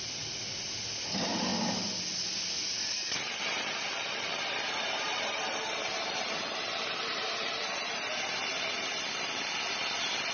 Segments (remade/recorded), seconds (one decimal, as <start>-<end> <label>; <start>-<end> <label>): 0.0-1.5 remade; 1.5-2.2 recorded; 2.2-10.3 remade